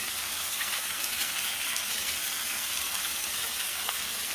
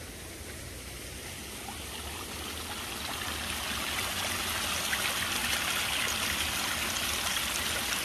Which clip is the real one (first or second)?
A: second